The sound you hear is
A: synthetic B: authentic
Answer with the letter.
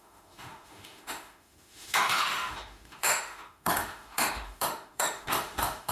A